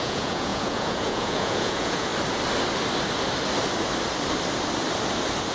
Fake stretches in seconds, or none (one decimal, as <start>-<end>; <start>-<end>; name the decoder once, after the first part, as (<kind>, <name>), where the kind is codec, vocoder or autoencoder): 0.0-2.1 (vocoder, Vocos)